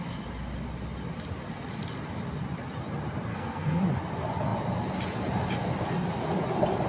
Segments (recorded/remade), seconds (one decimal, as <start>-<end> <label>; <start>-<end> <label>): 0.0-3.3 recorded; 3.3-3.8 remade; 3.8-6.9 recorded